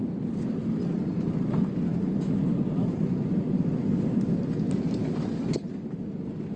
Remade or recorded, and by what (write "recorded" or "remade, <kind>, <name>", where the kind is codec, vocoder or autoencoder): recorded